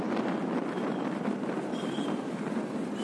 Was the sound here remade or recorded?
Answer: recorded